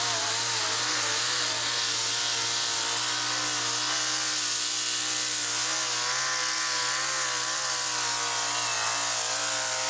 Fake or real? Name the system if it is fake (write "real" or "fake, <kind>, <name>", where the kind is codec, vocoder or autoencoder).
real